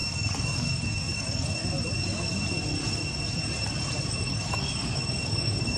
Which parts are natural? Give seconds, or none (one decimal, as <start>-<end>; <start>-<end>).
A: 1.6-4.1